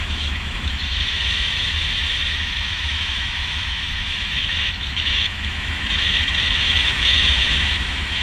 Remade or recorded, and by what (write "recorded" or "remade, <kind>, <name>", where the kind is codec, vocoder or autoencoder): remade, autoencoder, DAC-VAE